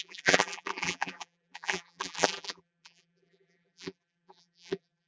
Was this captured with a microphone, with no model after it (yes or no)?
no